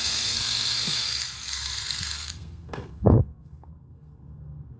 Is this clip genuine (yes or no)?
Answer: no